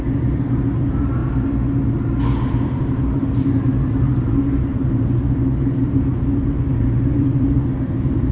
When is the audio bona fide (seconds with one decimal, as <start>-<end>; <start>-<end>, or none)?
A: 1.2-2.5